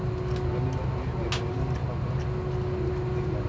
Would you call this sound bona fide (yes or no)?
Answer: yes